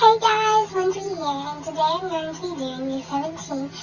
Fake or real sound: real